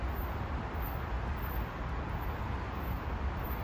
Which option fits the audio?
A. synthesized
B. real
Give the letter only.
B